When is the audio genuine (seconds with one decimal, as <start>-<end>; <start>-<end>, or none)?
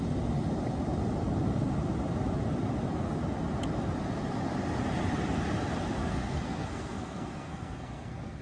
0.0-6.0